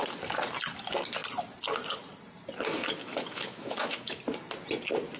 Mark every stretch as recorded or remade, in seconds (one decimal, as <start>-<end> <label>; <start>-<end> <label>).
0.0-3.0 recorded; 3.0-4.2 remade; 4.2-5.2 recorded